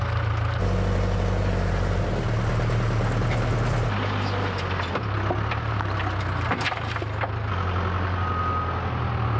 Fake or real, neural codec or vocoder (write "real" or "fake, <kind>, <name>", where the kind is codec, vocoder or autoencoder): real